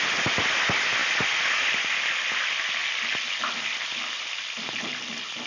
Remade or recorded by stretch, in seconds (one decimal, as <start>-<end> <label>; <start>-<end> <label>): 0.0-5.5 recorded